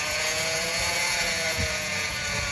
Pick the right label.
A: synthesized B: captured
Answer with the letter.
A